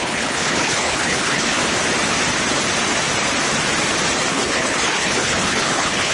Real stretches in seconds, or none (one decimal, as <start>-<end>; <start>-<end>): 1.6-4.3